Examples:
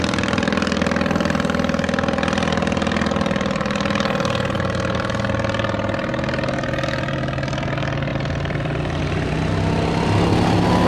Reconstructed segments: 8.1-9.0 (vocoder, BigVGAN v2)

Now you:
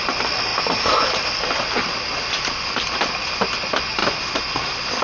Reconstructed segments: 0.5-1.6 (vocoder, BigVGAN v2)

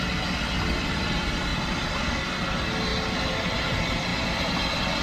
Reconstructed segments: none